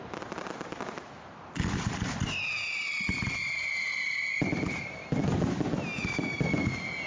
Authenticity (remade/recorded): recorded